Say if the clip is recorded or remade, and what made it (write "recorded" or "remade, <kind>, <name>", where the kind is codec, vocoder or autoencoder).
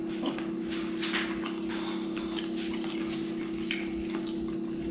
recorded